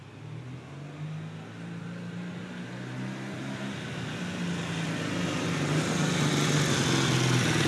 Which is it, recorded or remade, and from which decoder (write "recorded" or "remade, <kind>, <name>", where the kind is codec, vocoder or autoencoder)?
recorded